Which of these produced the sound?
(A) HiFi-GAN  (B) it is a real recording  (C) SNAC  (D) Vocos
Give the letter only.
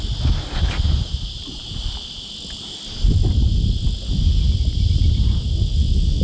B